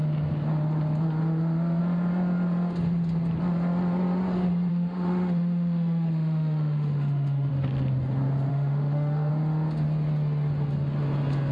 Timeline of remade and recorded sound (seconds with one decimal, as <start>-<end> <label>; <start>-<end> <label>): 0.0-4.7 recorded; 4.7-7.5 remade; 7.5-8.5 recorded; 8.5-9.3 remade; 9.3-11.5 recorded